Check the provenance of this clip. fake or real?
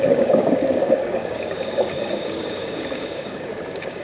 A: fake